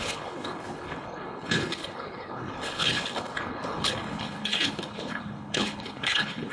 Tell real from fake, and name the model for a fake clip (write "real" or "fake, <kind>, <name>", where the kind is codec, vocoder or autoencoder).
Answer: fake, codec, HILCodec